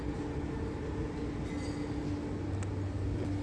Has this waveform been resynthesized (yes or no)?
no